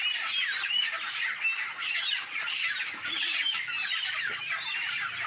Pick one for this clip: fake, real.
real